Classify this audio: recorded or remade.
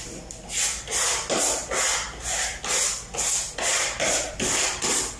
recorded